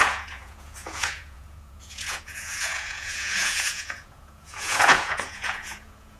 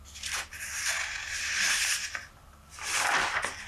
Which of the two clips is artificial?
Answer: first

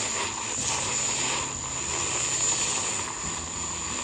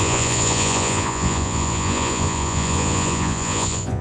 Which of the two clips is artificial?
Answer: second